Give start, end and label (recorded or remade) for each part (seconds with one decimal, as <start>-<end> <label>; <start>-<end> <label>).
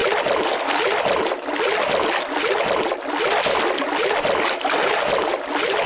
0.0-5.9 recorded